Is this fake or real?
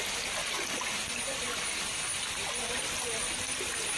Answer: real